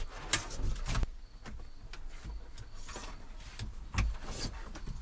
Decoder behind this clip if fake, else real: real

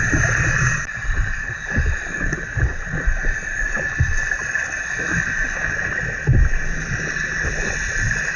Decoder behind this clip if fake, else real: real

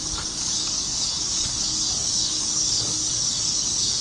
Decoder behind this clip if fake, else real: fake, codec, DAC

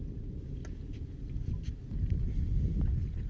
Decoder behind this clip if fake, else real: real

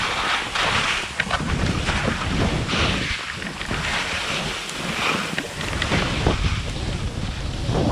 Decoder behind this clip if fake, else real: real